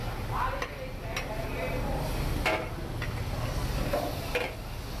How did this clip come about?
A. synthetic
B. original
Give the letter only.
B